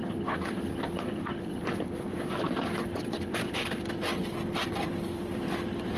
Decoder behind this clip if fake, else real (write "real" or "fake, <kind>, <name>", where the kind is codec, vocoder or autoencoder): fake, vocoder, BigVGAN v2